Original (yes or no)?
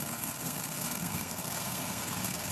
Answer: no